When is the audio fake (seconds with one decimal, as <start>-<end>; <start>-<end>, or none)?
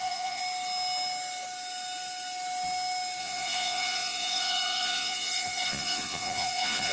0.0-0.4; 3.2-6.9